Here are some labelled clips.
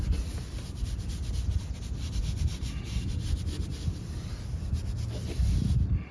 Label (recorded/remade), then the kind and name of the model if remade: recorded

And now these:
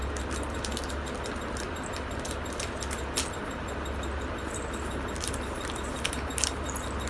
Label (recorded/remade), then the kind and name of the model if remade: recorded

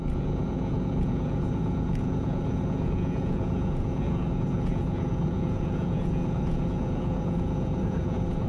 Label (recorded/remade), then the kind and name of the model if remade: remade, vocoder, Vocos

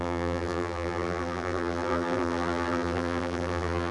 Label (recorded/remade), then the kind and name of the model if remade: remade, vocoder, BigVGAN v2